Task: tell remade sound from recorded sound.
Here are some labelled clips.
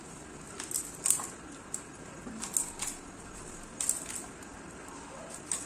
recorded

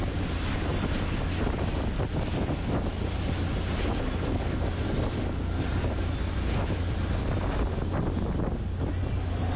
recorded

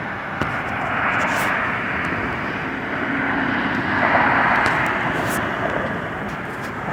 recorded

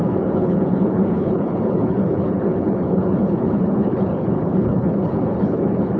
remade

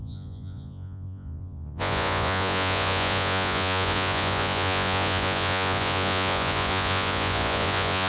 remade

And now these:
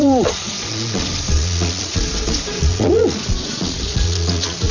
remade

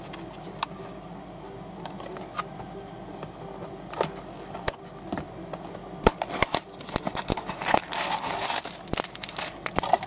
recorded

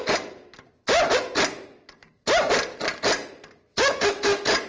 recorded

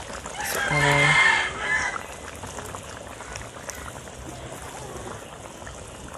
recorded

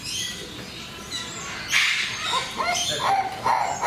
recorded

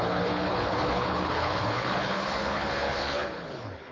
remade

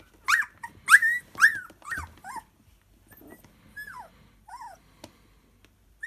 recorded